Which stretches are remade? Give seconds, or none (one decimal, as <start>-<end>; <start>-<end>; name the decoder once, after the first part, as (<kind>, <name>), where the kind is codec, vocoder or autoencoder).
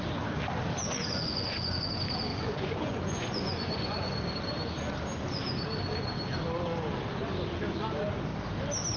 0.8-1.9 (vocoder, Vocos); 2.3-4.3